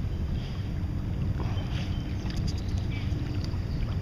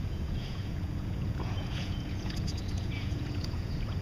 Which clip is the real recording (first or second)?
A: first